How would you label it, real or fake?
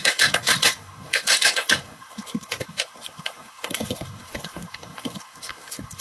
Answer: fake